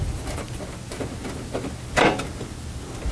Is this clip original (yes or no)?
yes